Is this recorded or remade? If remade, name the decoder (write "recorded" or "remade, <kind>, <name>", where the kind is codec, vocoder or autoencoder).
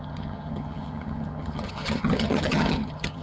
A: remade, vocoder, HiFi-GAN